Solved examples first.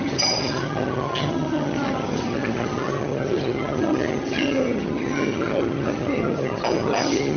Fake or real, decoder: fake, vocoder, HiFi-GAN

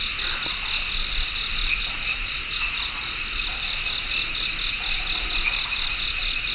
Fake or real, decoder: real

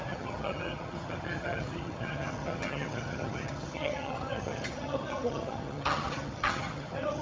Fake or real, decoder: fake, vocoder, HiFi-GAN